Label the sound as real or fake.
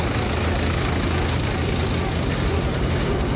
real